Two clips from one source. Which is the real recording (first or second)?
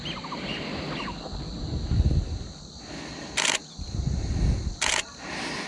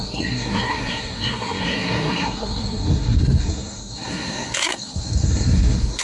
first